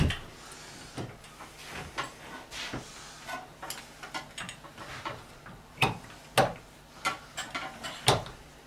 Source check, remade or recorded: recorded